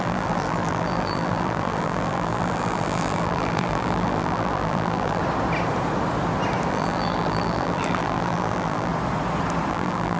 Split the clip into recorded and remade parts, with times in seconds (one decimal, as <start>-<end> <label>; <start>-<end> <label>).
0.0-5.2 remade; 5.2-6.7 recorded; 6.7-8.9 remade; 8.9-9.7 recorded; 9.7-10.2 remade